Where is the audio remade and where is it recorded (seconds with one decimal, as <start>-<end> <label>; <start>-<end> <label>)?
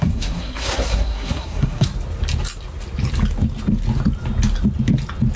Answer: 0.0-1.9 remade; 1.9-5.4 recorded